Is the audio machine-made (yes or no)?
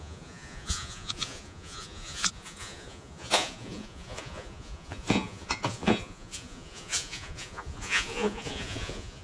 yes